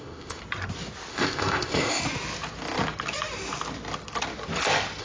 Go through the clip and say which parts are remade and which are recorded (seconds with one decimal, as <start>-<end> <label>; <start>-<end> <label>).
0.0-0.4 remade; 0.4-1.1 recorded; 1.1-2.0 remade; 2.0-5.0 recorded